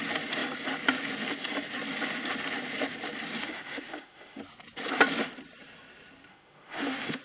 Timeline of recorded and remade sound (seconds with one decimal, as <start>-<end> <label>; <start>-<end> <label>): 0.0-3.4 recorded; 3.4-4.4 remade; 4.4-6.3 recorded; 6.3-7.2 remade